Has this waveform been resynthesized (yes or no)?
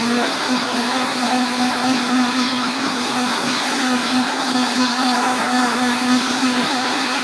yes